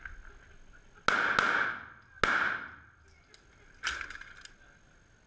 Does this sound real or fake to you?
real